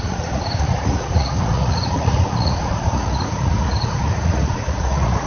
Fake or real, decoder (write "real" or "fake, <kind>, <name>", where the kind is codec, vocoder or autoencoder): fake, vocoder, Vocos